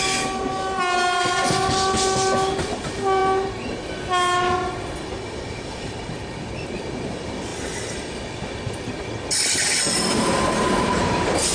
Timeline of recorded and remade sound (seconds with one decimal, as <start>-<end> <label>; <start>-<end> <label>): 0.0-11.5 recorded